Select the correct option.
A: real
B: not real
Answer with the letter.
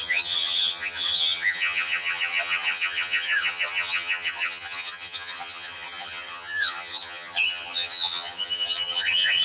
B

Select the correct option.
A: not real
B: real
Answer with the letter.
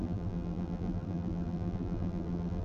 A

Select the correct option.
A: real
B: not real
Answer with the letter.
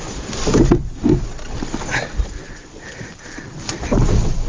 A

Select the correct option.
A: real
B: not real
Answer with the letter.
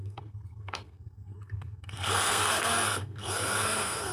B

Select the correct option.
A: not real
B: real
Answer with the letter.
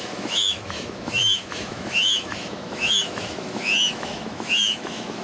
A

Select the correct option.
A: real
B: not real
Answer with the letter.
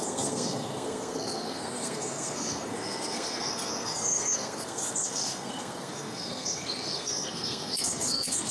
B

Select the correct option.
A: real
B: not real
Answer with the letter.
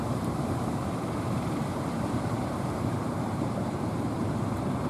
B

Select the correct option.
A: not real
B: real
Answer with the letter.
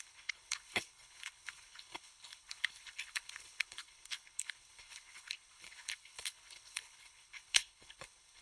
A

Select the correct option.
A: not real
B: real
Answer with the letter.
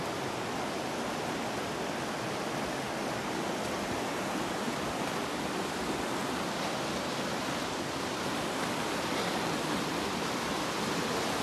B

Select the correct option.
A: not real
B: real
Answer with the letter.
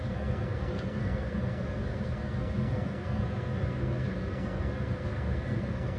A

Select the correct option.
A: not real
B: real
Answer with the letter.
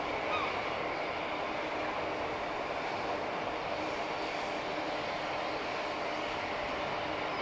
B